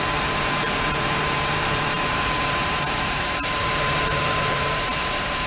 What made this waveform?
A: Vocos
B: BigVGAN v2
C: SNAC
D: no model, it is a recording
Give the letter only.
B